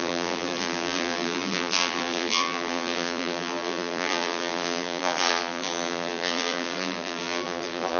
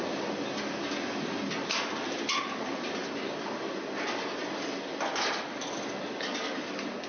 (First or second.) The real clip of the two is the second